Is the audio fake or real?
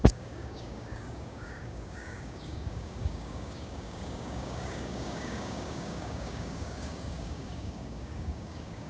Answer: fake